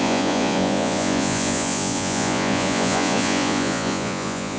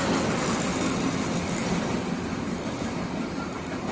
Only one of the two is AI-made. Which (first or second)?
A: first